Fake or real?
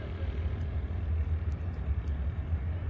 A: real